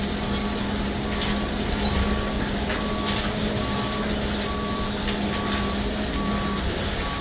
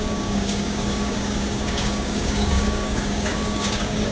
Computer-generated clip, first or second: second